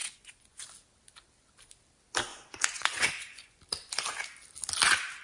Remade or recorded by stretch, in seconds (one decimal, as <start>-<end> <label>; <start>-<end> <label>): 0.0-0.6 remade; 0.6-2.3 recorded; 2.3-3.6 remade; 3.6-5.2 recorded